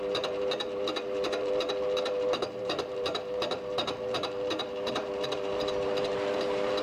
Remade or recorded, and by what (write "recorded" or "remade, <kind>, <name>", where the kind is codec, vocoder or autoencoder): remade, vocoder, BigVGAN v2